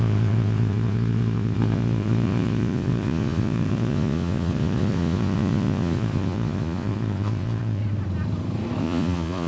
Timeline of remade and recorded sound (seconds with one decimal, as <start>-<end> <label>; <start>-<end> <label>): 0.0-7.8 remade; 7.8-8.8 recorded; 8.8-9.5 remade